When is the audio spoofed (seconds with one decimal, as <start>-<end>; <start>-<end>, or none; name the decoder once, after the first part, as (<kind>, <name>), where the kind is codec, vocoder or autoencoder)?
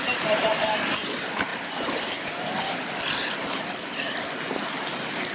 0.0-5.3 (vocoder, BigVGAN v2)